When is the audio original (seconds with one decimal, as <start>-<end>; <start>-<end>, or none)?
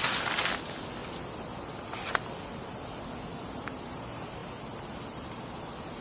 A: 0.0-6.0